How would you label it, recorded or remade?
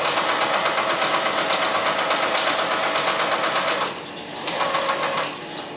recorded